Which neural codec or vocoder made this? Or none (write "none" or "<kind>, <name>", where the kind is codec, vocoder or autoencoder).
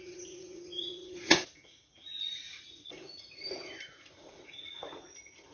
vocoder, Vocos